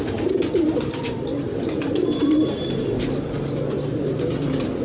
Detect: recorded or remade recorded